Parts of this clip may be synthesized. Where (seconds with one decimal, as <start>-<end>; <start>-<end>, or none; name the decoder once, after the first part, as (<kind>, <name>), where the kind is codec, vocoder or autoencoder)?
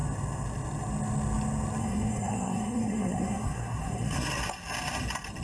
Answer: 1.8-4.4 (codec, SNAC)